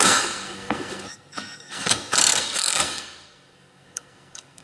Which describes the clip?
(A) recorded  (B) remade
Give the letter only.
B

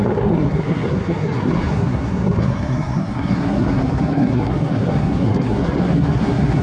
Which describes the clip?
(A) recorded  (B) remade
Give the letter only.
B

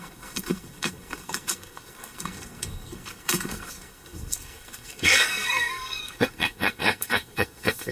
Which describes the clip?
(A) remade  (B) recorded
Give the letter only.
A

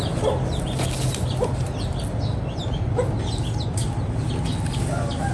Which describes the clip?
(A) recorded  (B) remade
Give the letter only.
A